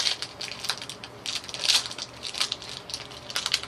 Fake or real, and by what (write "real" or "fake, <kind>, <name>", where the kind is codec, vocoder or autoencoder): real